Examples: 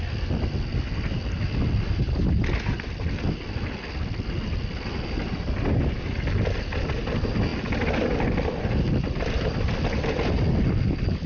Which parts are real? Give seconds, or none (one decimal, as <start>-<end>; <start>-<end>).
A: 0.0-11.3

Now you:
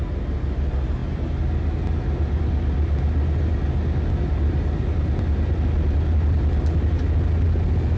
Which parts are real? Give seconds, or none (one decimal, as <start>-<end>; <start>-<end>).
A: 0.0-8.0

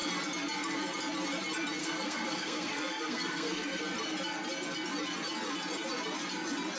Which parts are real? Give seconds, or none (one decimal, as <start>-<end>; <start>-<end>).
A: 0.0-1.8; 3.8-6.8